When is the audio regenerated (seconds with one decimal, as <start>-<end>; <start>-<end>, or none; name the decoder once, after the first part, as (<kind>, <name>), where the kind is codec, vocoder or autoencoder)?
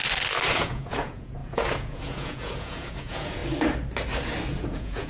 0.5-3.4 (vocoder, Vocos); 4.6-5.1